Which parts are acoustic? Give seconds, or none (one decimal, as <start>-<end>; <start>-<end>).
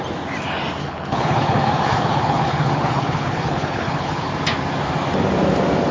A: 0.0-0.8; 4.3-5.9